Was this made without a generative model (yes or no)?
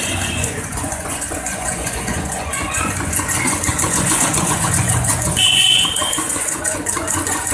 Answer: no